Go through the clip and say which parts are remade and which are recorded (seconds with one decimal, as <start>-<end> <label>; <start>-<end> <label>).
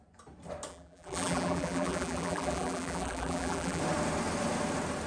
0.0-0.7 recorded; 0.7-3.8 remade; 3.8-5.1 recorded